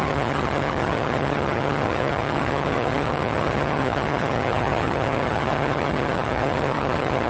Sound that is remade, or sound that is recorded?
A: remade